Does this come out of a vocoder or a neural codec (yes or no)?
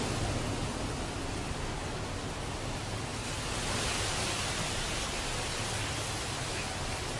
no